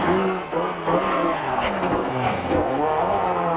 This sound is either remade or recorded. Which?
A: remade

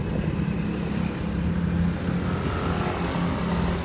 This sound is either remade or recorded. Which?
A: recorded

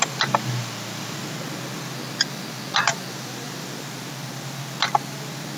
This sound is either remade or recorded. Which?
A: recorded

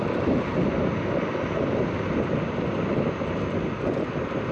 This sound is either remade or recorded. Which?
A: recorded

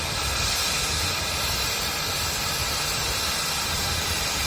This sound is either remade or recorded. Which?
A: recorded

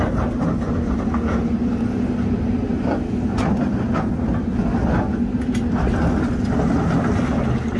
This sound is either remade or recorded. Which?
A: recorded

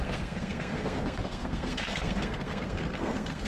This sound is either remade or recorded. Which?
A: remade